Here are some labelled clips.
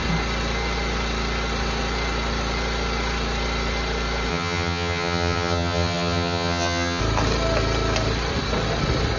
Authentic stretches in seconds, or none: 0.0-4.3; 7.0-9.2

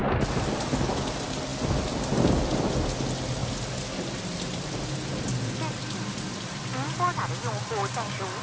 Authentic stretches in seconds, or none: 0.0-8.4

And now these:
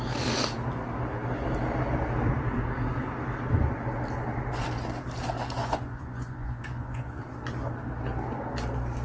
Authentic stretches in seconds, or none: 0.0-5.6; 7.2-9.0

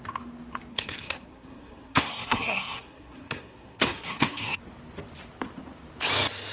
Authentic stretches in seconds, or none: 0.0-0.7; 4.6-6.5